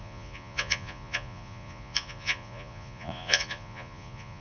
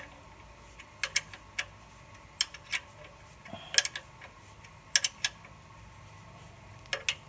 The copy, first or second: first